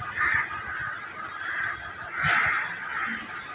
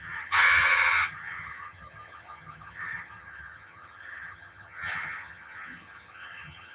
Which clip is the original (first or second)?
first